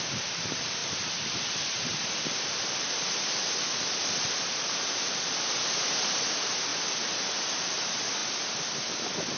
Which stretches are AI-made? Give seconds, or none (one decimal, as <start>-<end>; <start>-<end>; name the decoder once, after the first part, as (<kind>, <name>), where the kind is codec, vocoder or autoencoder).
0.0-6.7 (vocoder, BigVGAN v2); 7.7-9.4